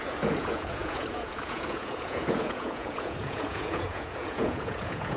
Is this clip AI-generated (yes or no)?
yes